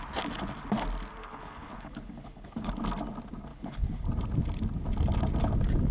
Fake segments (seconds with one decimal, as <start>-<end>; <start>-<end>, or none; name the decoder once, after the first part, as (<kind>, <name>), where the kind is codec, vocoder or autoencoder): 1.2-2.7 (codec, HILCodec); 3.5-4.0